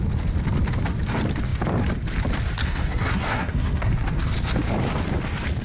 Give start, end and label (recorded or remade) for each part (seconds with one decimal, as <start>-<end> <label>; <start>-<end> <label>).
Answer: 0.0-2.6 recorded; 2.6-3.9 remade; 3.9-5.6 recorded